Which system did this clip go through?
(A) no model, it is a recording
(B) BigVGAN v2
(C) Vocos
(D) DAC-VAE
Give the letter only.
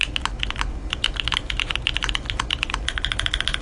A